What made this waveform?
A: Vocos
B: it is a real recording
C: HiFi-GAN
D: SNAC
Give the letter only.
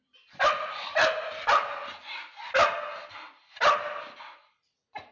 B